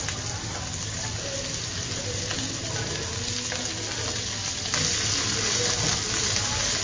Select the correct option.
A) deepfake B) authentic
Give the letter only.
B